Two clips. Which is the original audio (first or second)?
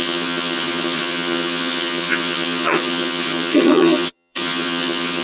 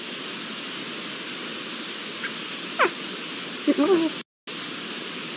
second